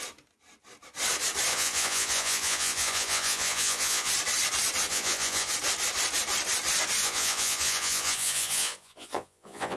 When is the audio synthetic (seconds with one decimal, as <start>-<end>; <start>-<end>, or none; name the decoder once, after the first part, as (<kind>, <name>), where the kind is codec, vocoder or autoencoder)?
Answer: 1.5-4.1 (vocoder, Vocos); 4.9-5.5; 7.0-9.8